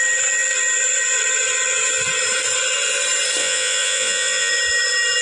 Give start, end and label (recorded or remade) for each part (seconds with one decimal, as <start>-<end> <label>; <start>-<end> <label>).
0.0-3.4 recorded; 3.4-4.5 remade; 4.5-5.2 recorded